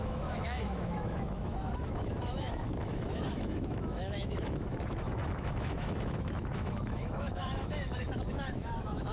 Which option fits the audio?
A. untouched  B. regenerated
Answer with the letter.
B